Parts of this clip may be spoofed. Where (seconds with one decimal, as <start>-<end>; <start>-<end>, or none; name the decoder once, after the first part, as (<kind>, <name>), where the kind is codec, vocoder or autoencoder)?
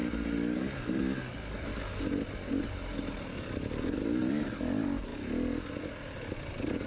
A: none